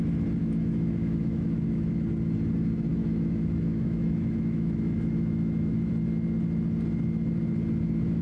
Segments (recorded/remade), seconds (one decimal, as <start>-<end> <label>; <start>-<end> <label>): 0.0-0.4 recorded; 0.4-1.9 remade; 1.9-2.9 recorded; 2.9-5.9 remade; 5.9-8.2 recorded